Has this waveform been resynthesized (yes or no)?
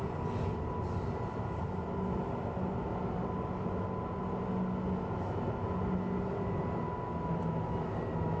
no